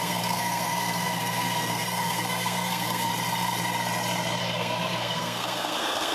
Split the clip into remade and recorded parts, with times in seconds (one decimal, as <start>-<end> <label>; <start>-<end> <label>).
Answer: 0.0-3.1 remade; 3.1-4.4 recorded; 4.4-6.1 remade